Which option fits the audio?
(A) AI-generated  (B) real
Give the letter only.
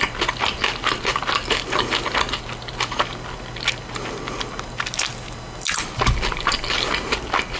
B